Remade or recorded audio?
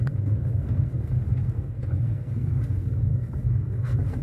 remade